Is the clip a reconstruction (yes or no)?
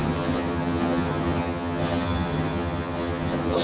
yes